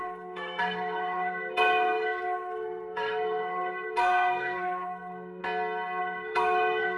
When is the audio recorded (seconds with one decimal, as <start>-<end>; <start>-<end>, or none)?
5.4-6.0